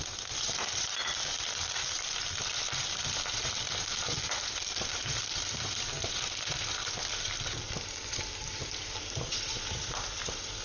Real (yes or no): no